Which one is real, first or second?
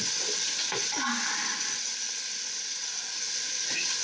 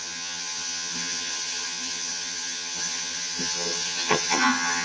first